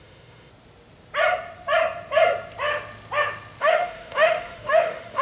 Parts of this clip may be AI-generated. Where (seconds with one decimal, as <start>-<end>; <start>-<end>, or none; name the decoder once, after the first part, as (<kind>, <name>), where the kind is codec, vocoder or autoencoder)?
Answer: 0.0-0.5 (autoencoder, DAC-VAE); 3.6-5.2